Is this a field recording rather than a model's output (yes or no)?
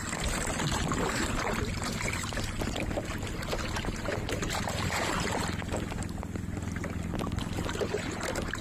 yes